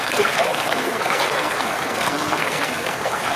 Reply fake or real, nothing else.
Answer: fake